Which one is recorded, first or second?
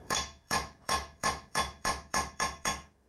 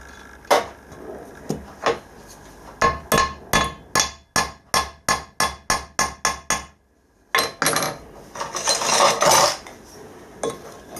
second